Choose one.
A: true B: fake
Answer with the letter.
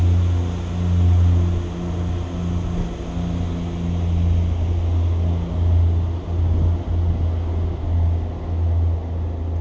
A